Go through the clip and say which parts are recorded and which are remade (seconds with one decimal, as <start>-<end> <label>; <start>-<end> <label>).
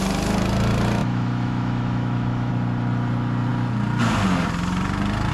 0.0-1.0 recorded; 1.0-2.5 remade; 2.5-5.3 recorded